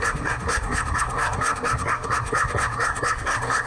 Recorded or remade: remade